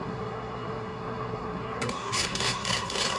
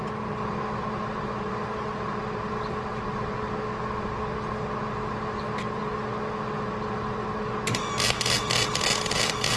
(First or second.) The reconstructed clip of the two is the first